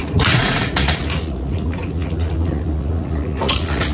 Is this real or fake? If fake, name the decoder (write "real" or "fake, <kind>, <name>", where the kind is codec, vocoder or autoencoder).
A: fake, vocoder, Vocos